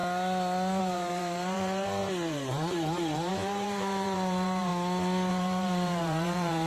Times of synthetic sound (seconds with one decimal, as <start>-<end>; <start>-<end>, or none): 0.8-4.7; 5.3-6.7